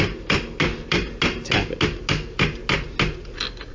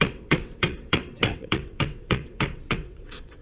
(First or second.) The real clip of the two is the first